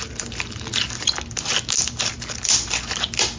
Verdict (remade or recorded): recorded